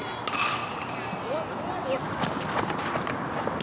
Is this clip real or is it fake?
real